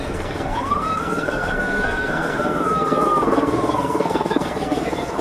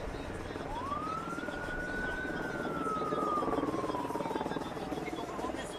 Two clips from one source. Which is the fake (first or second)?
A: first